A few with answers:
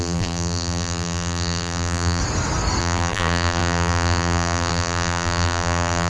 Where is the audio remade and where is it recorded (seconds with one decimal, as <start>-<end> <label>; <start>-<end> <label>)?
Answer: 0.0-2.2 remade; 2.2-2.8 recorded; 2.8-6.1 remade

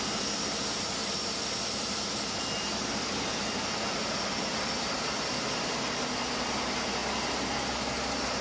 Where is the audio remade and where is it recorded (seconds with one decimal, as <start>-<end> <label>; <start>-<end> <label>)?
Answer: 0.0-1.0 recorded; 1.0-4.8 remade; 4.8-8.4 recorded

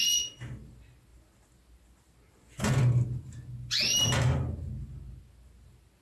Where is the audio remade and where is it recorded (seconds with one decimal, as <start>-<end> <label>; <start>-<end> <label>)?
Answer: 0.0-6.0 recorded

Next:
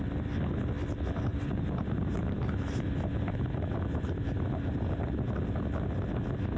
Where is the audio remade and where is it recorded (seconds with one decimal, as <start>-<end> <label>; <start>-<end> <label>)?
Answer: 0.0-1.3 recorded; 1.3-5.3 remade; 5.3-6.6 recorded